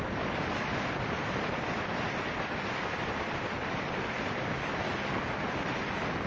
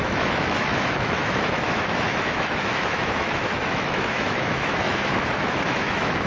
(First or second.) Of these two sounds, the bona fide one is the first